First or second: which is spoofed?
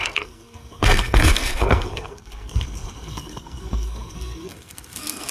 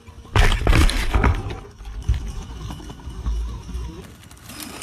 first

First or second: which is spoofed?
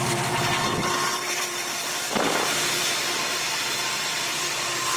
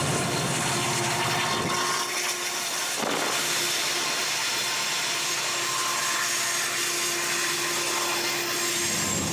first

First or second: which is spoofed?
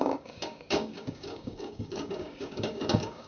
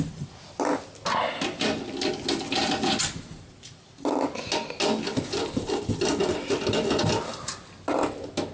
first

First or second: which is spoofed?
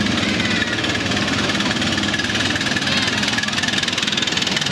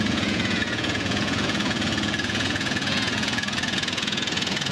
second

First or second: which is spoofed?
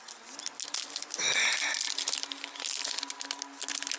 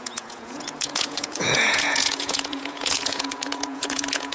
second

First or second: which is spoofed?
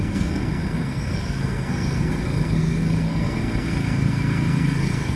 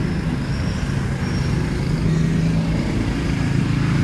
first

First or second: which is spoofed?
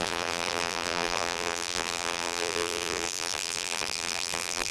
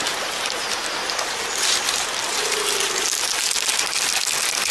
first